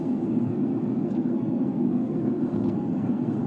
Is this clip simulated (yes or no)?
yes